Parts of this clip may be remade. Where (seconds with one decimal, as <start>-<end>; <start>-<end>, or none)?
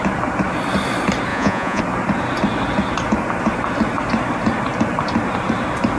1.3-1.8